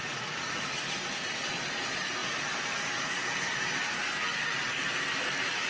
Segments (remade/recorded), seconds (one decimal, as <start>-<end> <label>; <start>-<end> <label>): 0.0-0.6 remade; 0.6-5.7 recorded